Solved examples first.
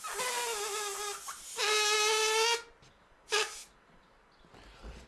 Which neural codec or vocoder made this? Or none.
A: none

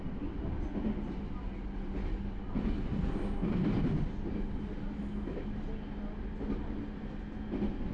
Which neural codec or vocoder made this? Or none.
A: none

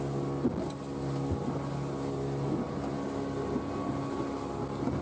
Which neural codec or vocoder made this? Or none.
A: none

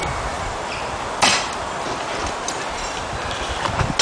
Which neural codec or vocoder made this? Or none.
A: none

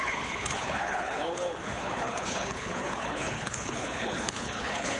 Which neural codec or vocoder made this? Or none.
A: codec, HILCodec